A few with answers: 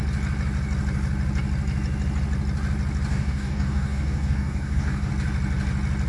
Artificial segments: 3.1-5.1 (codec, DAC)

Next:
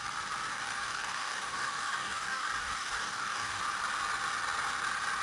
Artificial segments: 0.5-3.6 (codec, DAC)